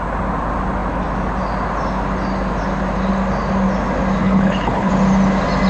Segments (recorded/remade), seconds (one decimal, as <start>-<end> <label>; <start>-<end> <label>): 0.0-4.2 recorded; 4.2-4.9 remade; 4.9-5.7 recorded